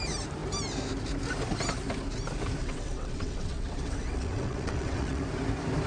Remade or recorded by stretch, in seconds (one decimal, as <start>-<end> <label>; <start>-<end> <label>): 0.0-2.6 recorded; 2.6-5.2 remade; 5.2-5.9 recorded